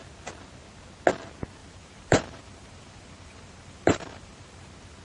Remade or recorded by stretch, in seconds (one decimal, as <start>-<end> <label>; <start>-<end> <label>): 0.0-1.6 recorded; 1.6-4.6 remade; 4.6-5.0 recorded